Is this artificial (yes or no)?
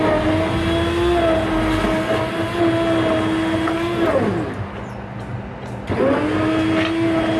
no